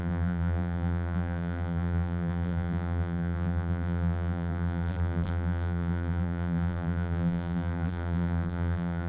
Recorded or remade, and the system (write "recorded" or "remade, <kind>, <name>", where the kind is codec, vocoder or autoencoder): remade, vocoder, BigVGAN v2